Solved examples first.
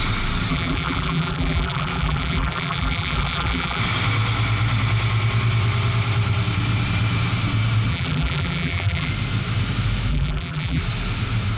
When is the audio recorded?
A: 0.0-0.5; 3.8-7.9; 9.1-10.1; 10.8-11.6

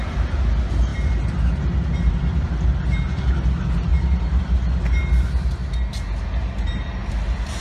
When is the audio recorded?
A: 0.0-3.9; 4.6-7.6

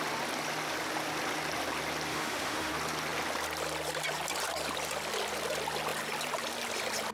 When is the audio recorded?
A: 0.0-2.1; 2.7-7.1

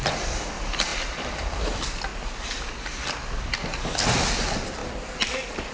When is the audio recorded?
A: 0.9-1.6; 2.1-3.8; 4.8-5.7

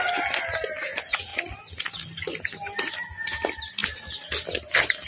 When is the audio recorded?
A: 0.0-5.1

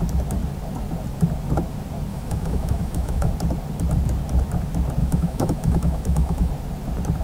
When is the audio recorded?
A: 0.0-2.1; 3.3-5.0; 6.5-7.2

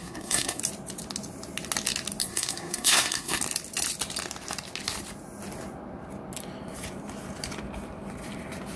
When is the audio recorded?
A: 0.6-2.2; 3.4-8.8